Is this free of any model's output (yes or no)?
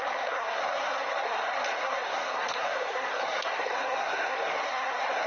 no